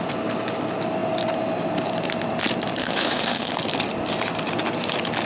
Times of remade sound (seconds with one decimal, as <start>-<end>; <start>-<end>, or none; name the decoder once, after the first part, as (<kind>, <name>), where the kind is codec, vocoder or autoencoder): 2.8-3.5 (autoencoder, DAC-VAE)